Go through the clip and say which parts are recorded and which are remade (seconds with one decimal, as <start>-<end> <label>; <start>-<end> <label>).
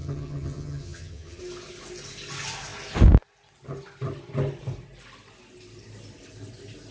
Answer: 0.0-1.4 remade; 1.4-6.9 recorded